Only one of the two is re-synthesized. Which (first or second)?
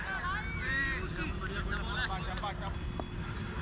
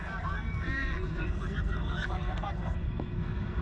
second